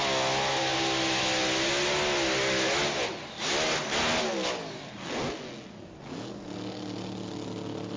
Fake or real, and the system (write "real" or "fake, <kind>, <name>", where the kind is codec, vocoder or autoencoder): real